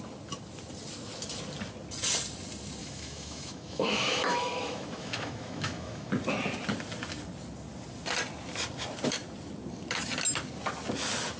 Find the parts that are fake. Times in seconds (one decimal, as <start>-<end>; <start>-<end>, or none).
2.8-6.1